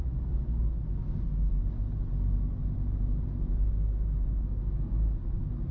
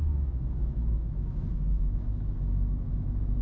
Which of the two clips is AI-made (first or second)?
second